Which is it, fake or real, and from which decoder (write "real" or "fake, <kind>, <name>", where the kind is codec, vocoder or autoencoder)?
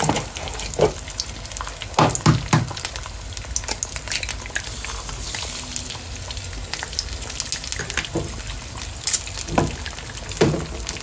real